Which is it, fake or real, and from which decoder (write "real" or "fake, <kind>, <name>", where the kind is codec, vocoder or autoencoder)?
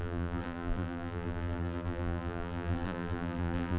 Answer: fake, vocoder, BigVGAN v2